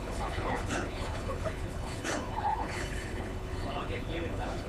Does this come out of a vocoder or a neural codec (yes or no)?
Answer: yes